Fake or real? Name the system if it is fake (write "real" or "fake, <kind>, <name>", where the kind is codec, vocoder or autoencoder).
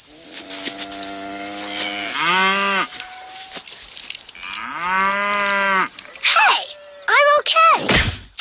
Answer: real